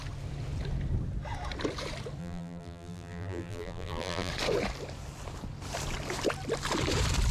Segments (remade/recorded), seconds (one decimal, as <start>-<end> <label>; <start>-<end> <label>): 0.0-2.2 recorded; 2.2-4.3 remade; 4.3-7.3 recorded